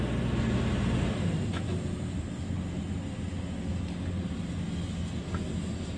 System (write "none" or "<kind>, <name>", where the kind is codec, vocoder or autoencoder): none